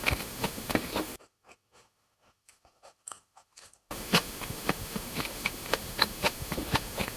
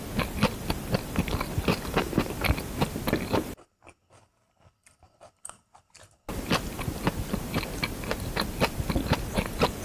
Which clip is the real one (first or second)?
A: second